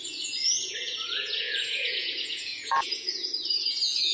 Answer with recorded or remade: remade